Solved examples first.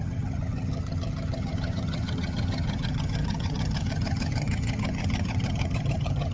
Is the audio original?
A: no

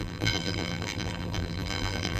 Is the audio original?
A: no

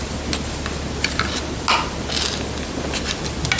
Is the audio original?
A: yes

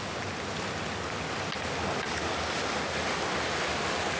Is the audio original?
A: yes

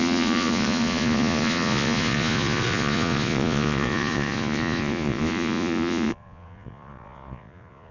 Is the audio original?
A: no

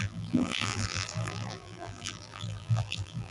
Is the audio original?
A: no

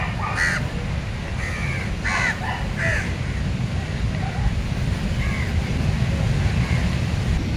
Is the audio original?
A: yes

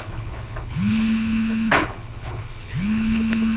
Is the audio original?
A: no